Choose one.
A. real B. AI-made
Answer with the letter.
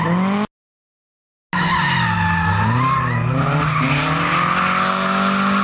A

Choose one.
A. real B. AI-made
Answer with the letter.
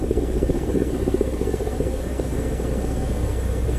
B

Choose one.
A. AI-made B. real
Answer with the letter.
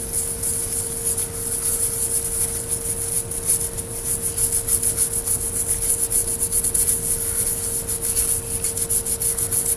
B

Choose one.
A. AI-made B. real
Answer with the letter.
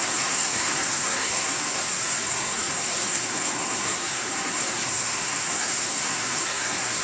A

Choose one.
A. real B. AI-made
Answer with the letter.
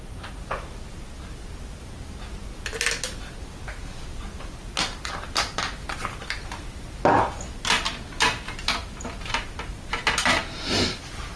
A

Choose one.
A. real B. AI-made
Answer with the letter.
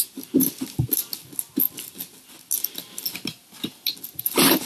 A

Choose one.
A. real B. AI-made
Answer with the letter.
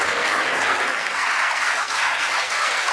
B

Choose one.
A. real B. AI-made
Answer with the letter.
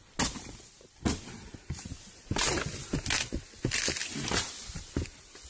A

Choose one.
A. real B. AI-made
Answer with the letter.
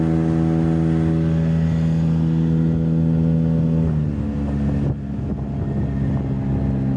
A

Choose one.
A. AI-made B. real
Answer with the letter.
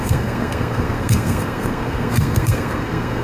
A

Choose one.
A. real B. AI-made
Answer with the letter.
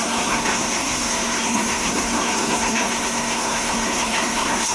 B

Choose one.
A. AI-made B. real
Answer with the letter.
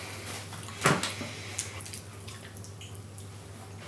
B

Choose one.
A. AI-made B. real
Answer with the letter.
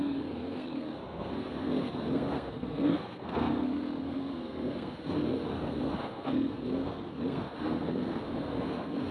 A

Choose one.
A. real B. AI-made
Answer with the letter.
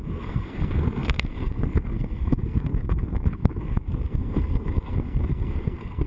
B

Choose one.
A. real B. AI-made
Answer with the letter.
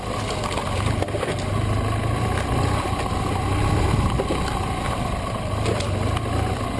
A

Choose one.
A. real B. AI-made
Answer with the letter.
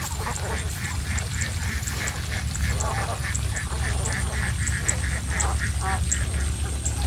A